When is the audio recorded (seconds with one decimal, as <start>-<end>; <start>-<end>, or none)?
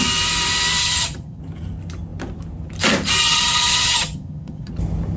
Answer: 0.0-0.8; 1.4-3.2; 4.7-5.2